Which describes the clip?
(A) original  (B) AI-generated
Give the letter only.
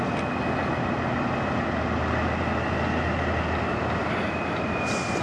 A